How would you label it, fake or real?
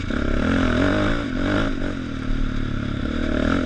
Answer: real